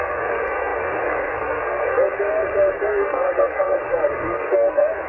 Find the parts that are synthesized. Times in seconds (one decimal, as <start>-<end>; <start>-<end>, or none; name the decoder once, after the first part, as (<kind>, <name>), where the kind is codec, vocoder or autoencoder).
0.0-5.1 (codec, SNAC)